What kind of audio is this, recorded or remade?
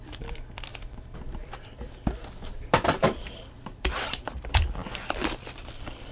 remade